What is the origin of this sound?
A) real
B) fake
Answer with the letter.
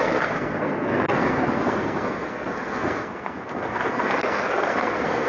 B